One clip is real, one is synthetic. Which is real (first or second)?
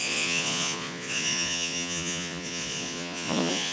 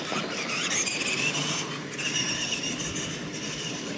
second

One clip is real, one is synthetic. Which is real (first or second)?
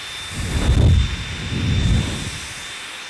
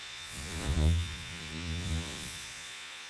first